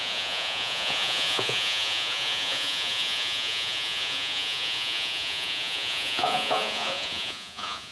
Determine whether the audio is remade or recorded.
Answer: remade